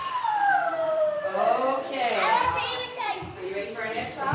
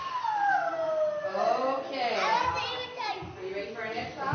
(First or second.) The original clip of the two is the second